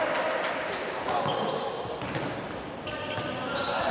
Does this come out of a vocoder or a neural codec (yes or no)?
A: no